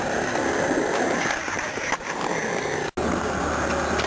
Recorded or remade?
recorded